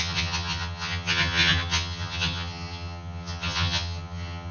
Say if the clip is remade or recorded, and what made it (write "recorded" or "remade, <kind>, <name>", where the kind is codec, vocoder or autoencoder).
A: remade, vocoder, HiFi-GAN